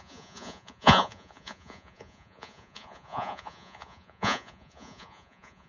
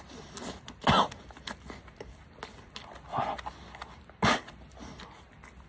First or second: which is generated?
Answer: first